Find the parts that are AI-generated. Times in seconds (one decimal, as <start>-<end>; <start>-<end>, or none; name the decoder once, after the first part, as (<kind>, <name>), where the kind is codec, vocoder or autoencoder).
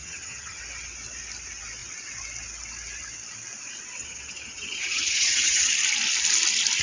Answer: 0.0-0.6 (vocoder, HiFi-GAN); 4.0-5.7